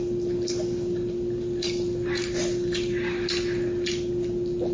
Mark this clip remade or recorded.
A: recorded